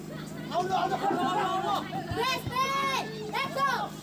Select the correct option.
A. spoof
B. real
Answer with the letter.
B